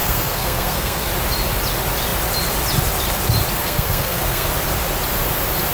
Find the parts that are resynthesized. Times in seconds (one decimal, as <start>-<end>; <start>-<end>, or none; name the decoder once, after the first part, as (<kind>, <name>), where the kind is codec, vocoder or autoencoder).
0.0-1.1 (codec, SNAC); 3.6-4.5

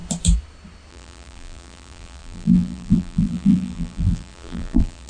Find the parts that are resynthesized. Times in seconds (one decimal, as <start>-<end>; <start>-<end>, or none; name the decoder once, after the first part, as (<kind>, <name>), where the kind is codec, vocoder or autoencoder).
0.9-5.1 (vocoder, BigVGAN v2)

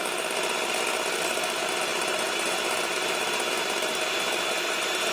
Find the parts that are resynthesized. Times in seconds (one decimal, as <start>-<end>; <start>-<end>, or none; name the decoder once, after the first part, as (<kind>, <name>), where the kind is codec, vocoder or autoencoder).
none